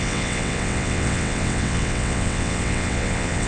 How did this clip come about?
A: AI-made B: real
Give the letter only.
A